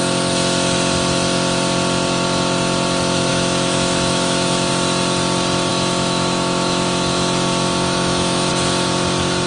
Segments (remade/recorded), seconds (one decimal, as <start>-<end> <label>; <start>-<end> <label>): 0.0-3.3 recorded; 3.3-4.7 remade; 4.7-5.7 recorded; 5.7-8.5 remade; 8.5-9.5 recorded